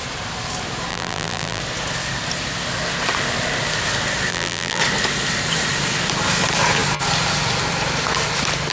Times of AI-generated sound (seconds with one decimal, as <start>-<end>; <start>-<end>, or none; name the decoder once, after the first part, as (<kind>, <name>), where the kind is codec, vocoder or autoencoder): 0.9-1.6 (vocoder, BigVGAN v2); 4.3-4.8